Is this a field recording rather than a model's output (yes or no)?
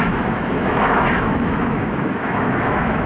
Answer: no